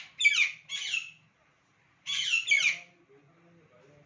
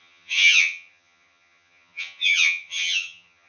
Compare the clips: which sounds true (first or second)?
first